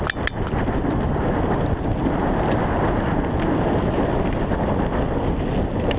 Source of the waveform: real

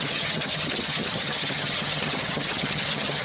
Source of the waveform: fake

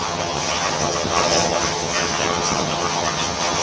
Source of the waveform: fake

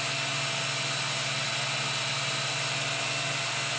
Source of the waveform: real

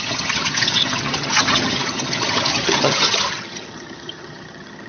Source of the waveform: fake